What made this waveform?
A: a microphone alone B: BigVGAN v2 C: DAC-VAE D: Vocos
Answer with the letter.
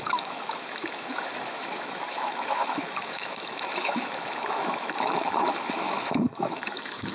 C